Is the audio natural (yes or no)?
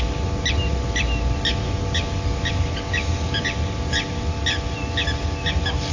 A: yes